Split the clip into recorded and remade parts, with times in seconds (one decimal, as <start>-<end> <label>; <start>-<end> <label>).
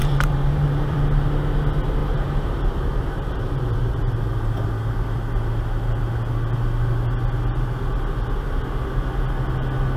0.0-1.0 remade; 1.0-2.0 recorded; 2.0-4.2 remade; 4.2-10.0 recorded